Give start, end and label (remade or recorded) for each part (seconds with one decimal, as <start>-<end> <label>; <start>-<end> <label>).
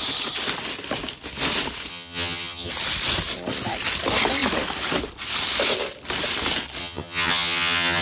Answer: 0.0-1.9 recorded; 1.9-2.7 remade; 2.7-6.8 recorded; 6.8-8.0 remade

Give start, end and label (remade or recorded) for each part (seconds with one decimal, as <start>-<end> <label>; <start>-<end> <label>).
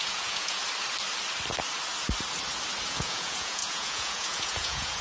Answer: 0.0-0.6 remade; 0.6-2.9 recorded; 2.9-5.0 remade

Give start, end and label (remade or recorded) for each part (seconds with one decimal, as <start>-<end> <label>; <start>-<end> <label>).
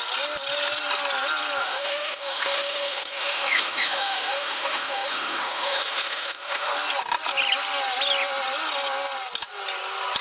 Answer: 0.0-1.6 recorded; 1.6-6.7 remade; 6.7-10.2 recorded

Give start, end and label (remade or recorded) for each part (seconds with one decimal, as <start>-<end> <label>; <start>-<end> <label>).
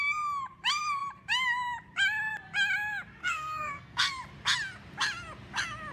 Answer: 0.0-3.2 recorded; 3.2-4.1 remade; 4.1-5.9 recorded